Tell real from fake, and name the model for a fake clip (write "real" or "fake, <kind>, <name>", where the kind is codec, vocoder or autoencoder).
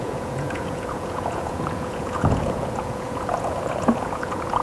fake, vocoder, Vocos